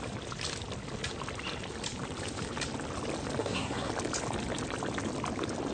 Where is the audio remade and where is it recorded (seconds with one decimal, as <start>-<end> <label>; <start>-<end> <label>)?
0.0-3.4 recorded; 3.4-3.9 remade; 3.9-5.7 recorded